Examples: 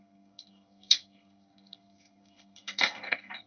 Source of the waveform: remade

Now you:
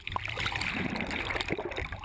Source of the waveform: recorded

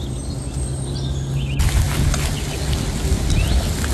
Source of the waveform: recorded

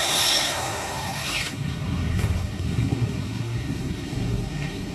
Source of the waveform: remade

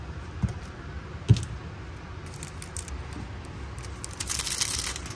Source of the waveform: recorded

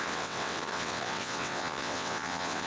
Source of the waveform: remade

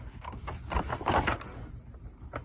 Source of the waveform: recorded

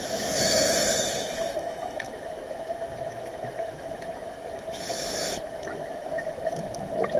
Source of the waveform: remade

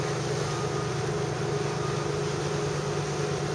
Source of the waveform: recorded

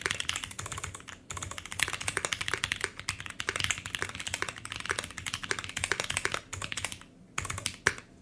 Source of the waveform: recorded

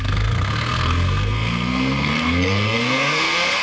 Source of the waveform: remade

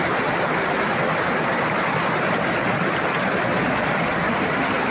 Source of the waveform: recorded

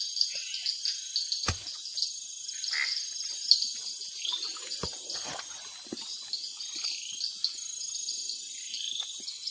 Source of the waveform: recorded